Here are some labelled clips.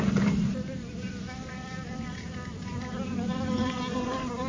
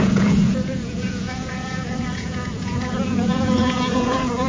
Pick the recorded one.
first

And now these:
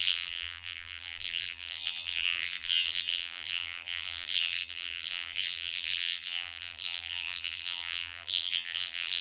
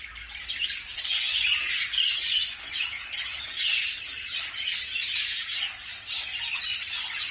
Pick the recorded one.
second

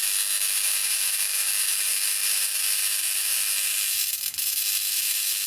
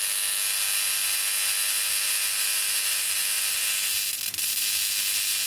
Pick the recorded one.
second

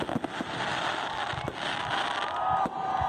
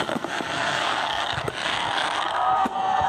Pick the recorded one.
first